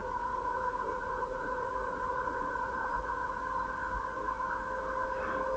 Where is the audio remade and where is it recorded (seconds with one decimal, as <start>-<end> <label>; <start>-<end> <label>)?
0.0-3.4 remade; 3.4-5.6 recorded